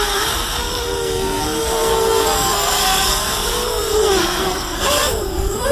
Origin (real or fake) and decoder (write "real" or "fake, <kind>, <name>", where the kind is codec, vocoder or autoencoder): fake, codec, SNAC